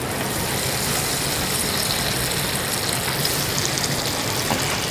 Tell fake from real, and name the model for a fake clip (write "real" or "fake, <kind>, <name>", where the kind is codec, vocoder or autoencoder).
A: real